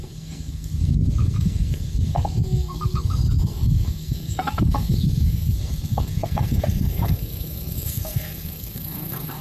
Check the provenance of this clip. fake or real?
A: fake